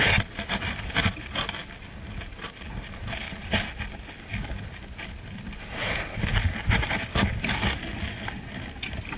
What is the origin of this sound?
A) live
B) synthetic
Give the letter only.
A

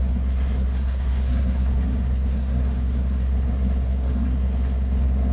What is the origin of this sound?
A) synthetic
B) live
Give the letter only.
A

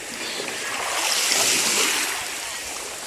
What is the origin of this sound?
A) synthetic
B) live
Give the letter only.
B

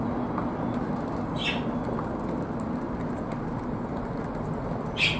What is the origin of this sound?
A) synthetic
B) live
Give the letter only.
B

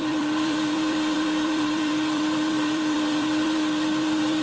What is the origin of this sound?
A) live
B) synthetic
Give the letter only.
B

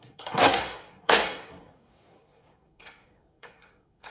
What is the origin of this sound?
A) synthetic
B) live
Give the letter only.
A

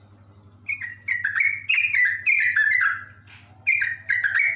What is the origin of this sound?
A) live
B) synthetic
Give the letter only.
A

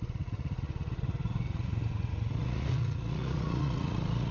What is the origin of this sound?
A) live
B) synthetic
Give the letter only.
B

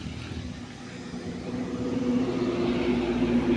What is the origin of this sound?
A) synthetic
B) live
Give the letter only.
B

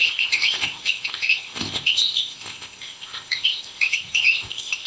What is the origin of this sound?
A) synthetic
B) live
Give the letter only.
A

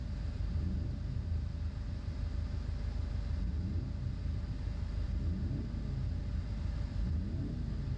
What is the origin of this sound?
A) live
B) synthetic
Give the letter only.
A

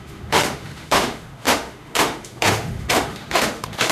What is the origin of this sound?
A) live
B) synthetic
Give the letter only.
B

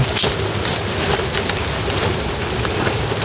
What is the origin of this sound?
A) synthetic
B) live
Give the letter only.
B